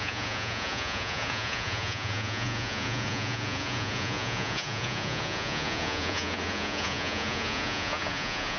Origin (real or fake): fake